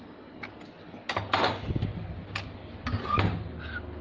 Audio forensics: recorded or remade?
recorded